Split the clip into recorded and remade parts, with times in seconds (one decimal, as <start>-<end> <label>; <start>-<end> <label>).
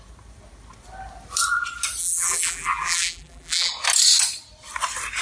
0.0-2.0 recorded; 2.0-3.7 remade; 3.7-5.2 recorded